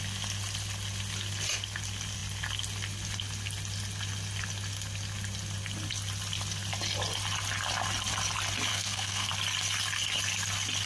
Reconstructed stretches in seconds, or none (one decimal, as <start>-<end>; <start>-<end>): 8.7-9.3